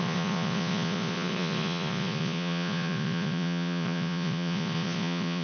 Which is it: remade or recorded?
remade